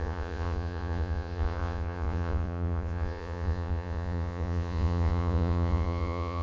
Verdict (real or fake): fake